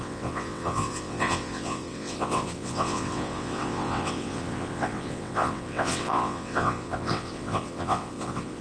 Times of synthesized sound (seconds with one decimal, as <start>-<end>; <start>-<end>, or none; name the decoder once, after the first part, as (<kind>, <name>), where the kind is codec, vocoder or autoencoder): 0.0-8.6 (vocoder, WaveNeXt)